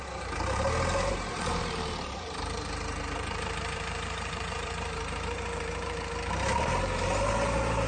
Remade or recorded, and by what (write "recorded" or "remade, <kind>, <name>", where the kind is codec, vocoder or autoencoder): remade, vocoder, BigVGAN v2